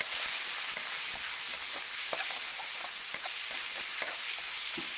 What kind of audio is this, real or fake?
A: real